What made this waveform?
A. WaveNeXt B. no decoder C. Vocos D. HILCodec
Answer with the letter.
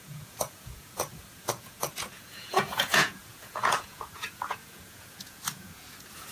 C